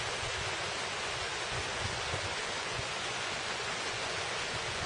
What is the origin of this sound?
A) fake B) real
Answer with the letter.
A